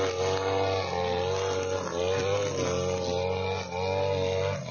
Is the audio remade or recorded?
recorded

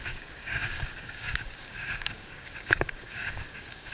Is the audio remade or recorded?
remade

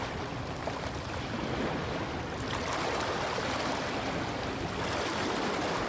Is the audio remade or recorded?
recorded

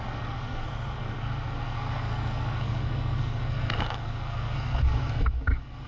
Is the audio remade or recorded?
remade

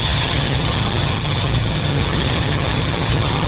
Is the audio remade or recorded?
remade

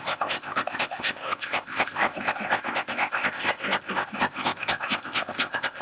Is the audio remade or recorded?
remade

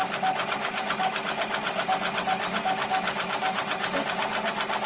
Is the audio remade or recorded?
recorded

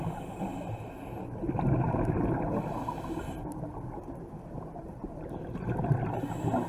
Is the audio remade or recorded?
recorded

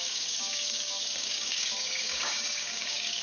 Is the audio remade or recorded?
remade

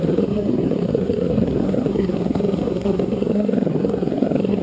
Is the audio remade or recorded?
remade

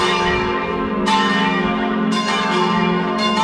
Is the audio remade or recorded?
remade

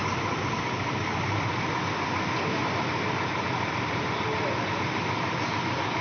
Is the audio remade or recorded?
recorded